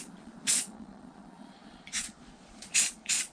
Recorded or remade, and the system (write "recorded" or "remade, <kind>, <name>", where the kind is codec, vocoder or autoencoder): remade, vocoder, Vocos